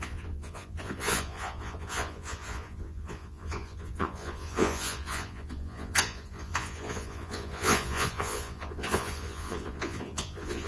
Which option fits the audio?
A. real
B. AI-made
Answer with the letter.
B